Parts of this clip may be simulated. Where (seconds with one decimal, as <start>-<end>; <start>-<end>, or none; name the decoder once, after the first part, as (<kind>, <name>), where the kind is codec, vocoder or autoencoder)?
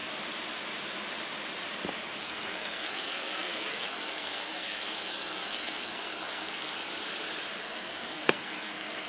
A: 2.2-6.9 (codec, SNAC); 7.6-9.1